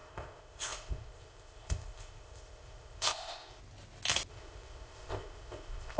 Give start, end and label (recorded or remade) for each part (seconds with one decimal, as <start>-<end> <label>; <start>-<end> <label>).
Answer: 0.0-3.6 remade; 3.6-4.3 recorded; 4.3-6.0 remade